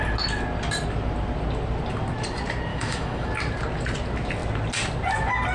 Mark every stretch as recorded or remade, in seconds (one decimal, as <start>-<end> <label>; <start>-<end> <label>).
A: 0.0-2.7 recorded; 2.7-3.3 remade; 3.3-5.5 recorded